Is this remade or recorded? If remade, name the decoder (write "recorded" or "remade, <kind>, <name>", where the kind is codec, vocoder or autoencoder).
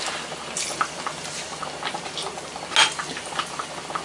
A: recorded